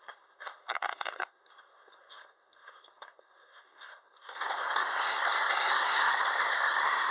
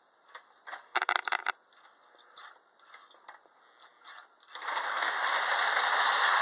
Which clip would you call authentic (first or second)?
second